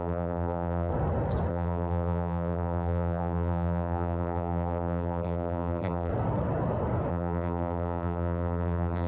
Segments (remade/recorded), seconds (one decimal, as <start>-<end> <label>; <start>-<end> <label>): 0.0-0.9 remade; 0.9-1.5 recorded; 1.5-6.1 remade; 6.1-7.1 recorded; 7.1-9.1 remade